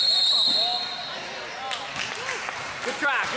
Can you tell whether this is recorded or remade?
recorded